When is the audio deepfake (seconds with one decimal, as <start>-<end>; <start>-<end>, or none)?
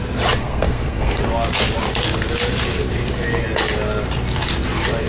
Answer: 0.4-1.2